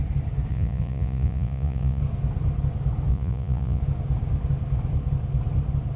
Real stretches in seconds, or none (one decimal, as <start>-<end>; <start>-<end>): 0.0-0.5; 2.0-3.1; 3.8-6.0